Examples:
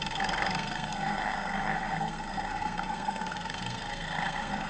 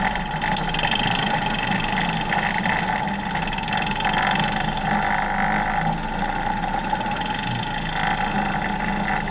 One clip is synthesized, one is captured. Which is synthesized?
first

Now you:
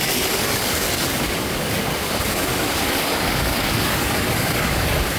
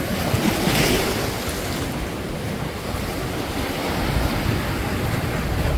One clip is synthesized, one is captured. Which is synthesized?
first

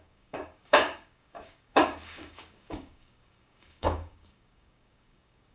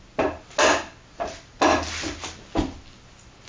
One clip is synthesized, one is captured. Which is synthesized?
first